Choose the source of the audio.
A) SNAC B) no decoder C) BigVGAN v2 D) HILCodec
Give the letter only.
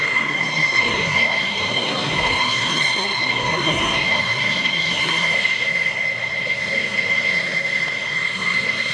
A